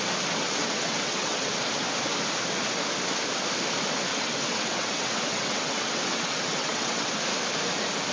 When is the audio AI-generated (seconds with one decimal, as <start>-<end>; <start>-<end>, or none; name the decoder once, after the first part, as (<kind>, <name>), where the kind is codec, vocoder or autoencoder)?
0.6-1.5 (vocoder, WaveNeXt); 4.1-7.1